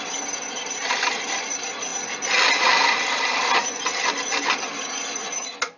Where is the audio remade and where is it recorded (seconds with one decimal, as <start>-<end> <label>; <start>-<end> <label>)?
0.0-5.8 recorded